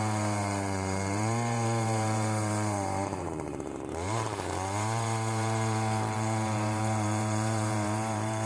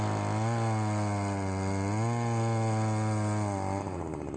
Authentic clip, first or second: second